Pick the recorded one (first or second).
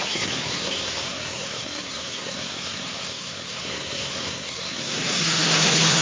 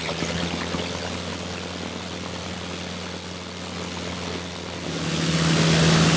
second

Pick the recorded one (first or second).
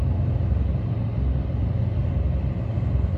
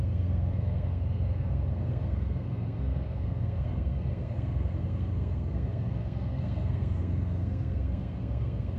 first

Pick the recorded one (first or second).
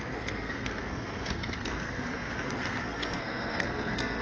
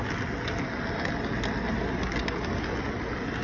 second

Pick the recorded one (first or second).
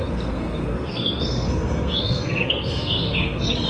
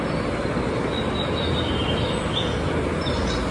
second